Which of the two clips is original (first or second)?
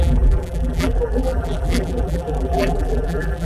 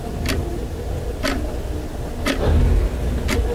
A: second